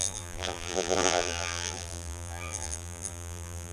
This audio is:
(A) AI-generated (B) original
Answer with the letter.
A